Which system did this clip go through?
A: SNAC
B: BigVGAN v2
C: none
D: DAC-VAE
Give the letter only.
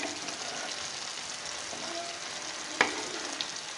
C